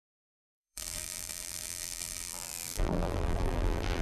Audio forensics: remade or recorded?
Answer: remade